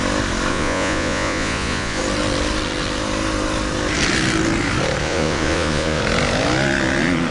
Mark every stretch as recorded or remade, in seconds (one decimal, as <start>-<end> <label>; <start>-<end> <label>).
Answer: 0.0-0.5 recorded; 0.5-2.0 remade; 2.0-5.0 recorded; 5.0-6.0 remade; 6.0-7.3 recorded